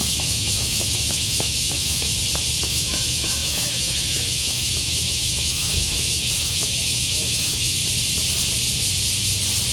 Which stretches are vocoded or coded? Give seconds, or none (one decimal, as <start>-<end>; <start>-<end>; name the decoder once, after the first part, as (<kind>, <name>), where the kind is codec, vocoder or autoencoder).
0.0-2.1 (autoencoder, DAC-VAE); 2.6-7.8